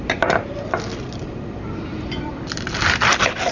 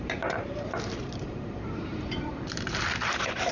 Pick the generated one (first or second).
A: second